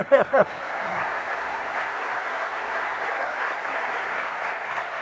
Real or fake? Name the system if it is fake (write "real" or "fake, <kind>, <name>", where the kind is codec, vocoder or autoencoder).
fake, codec, SNAC